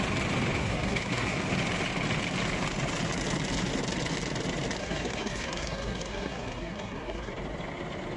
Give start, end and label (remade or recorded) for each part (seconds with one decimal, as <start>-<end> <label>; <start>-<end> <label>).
0.0-0.6 recorded; 0.6-1.4 remade; 1.4-4.8 recorded; 4.8-7.3 remade; 7.3-8.2 recorded